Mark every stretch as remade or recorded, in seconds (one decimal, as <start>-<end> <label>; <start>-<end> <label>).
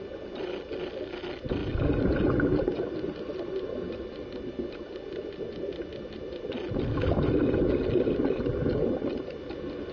0.0-9.9 recorded